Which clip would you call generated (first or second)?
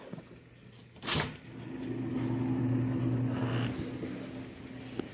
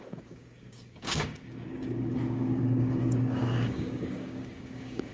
second